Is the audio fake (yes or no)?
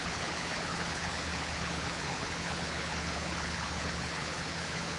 yes